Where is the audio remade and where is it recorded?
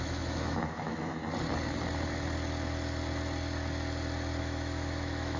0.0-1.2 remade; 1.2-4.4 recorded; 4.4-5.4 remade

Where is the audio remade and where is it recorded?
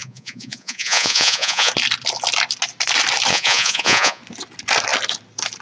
0.0-1.7 remade; 1.7-3.3 recorded; 3.3-4.2 remade; 4.2-5.6 recorded